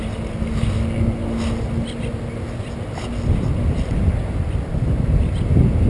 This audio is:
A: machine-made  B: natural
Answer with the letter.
B